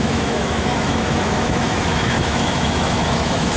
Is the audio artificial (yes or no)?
yes